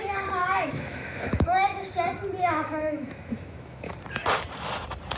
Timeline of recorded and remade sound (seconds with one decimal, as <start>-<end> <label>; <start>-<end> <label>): 0.0-0.4 recorded; 0.4-1.9 remade; 1.9-2.4 recorded; 2.4-3.9 remade; 3.9-5.2 recorded